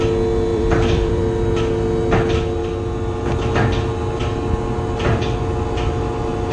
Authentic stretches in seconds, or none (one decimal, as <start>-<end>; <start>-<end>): 0.0-0.5; 1.2-6.5